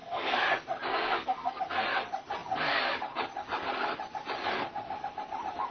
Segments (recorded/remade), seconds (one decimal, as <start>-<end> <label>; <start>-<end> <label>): 0.0-0.5 remade; 0.5-0.9 recorded; 0.9-1.6 remade; 1.6-5.7 recorded